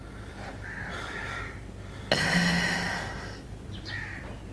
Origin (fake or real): real